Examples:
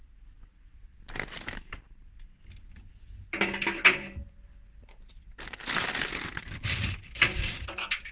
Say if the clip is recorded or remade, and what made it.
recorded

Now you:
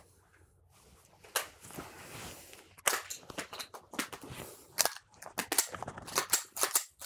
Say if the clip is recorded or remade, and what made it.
recorded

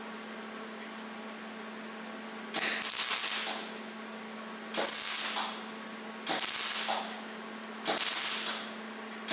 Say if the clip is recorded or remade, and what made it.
recorded